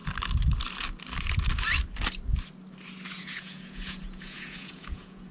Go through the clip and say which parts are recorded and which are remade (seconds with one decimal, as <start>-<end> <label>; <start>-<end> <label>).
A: 0.0-3.2 recorded; 3.2-5.3 remade